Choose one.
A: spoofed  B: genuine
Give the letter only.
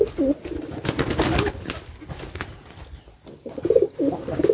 B